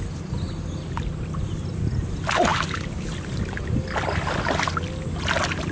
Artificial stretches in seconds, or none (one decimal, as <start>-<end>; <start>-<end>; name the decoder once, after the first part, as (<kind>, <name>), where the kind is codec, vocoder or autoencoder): none